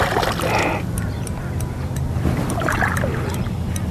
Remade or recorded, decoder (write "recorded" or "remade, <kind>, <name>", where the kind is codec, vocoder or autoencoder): recorded